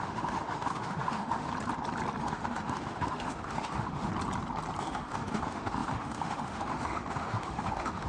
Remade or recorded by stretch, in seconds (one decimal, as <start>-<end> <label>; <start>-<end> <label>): 0.0-1.5 remade; 1.5-2.2 recorded; 2.2-4.1 remade; 4.1-4.8 recorded; 4.8-8.1 remade